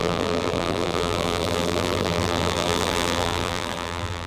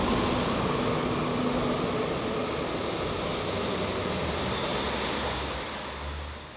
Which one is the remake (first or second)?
first